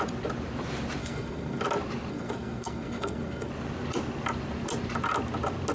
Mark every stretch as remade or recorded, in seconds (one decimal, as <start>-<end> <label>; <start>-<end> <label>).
0.0-1.0 recorded; 1.0-1.6 remade; 1.6-2.1 recorded; 2.1-3.5 remade; 3.5-5.7 recorded